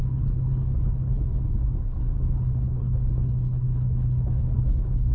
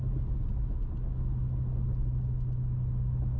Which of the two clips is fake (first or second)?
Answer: first